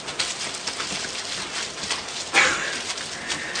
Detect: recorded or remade recorded